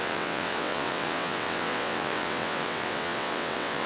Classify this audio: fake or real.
fake